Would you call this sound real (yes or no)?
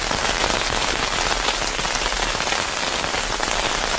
yes